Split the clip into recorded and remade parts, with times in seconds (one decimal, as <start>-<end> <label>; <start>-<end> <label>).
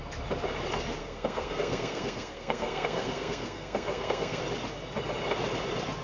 0.0-1.0 recorded; 1.0-4.4 remade; 4.4-6.0 recorded